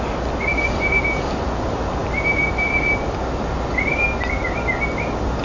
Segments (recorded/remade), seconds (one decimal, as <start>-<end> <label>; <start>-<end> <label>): 0.0-5.4 recorded